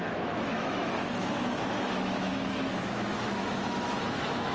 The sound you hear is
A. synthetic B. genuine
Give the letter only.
A